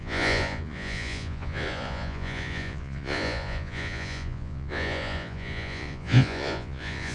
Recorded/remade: remade